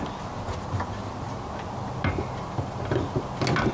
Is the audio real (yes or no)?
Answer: yes